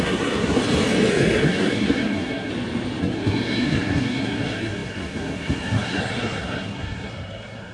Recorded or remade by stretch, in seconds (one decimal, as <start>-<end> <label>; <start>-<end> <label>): 0.0-0.6 remade; 0.6-1.1 recorded; 1.1-2.5 remade; 2.5-3.0 recorded; 3.0-7.7 remade